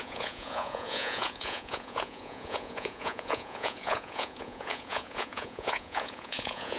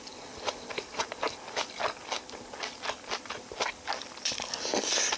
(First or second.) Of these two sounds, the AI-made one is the first